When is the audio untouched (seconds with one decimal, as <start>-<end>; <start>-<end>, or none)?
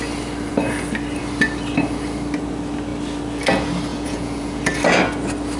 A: 0.0-3.9; 4.6-5.6